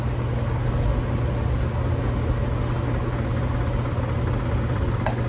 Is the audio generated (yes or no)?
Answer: no